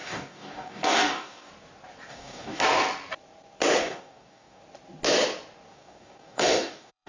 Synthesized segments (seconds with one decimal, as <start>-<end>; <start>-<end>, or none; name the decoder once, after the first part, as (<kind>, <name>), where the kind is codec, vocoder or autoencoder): 0.0-1.5 (codec, DAC); 2.1-2.6; 3.8-4.6; 5.7-7.1